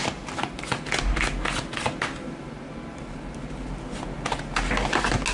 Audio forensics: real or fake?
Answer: real